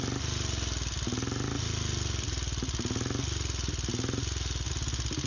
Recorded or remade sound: recorded